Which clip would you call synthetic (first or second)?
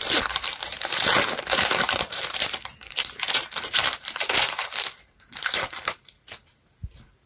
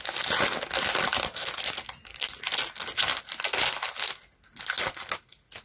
first